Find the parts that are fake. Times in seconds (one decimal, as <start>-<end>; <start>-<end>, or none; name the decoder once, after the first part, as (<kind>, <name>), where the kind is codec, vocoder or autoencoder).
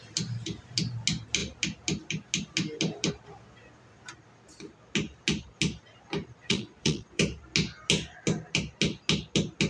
6.4-7.2 (vocoder, Vocos)